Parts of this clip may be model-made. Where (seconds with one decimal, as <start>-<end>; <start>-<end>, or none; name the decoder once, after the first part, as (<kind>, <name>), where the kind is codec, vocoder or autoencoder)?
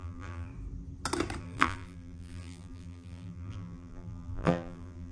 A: 0.0-0.5 (vocoder, BigVGAN v2); 1.4-5.1